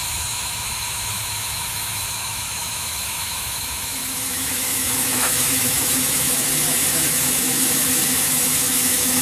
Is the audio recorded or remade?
remade